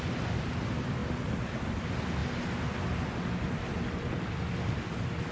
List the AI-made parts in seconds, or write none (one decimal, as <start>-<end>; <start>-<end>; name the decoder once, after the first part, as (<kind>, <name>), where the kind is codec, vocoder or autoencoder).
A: none